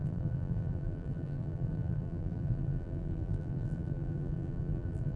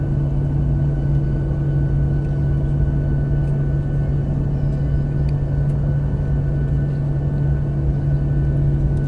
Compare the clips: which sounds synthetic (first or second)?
first